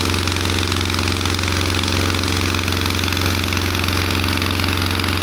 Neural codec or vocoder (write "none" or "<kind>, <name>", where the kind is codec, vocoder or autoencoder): none